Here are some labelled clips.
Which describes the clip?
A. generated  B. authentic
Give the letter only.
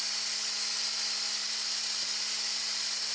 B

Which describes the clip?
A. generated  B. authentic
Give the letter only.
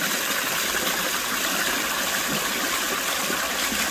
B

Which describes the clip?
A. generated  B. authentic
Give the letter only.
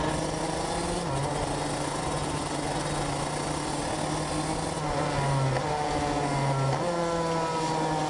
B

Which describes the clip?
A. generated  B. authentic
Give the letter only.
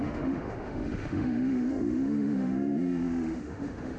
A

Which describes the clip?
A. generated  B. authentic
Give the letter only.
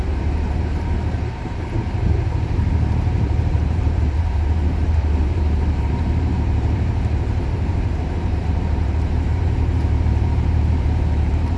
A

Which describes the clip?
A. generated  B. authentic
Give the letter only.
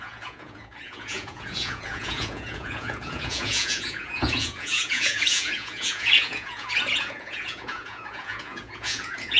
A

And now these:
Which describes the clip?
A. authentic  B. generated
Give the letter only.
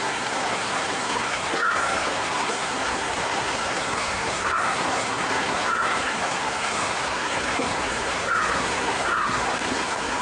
B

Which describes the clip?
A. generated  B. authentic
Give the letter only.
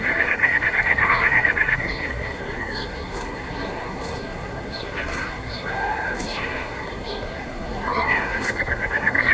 A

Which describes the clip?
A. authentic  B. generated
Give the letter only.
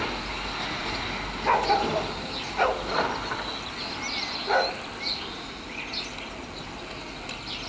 A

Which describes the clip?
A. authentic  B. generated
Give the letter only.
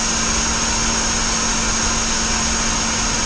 A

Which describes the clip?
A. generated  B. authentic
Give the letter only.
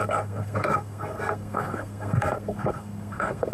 A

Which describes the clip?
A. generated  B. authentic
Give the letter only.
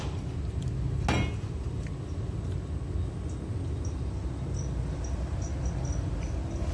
B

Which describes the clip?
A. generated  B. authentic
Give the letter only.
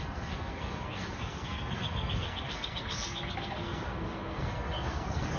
A